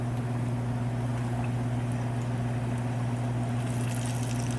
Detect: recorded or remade recorded